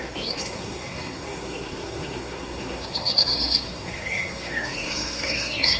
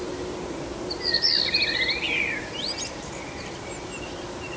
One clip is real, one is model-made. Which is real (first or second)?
second